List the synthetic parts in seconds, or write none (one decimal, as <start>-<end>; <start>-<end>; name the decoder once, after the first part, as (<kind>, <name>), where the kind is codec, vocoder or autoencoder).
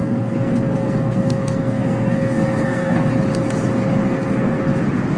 0.0-3.1 (codec, SNAC); 4.0-4.6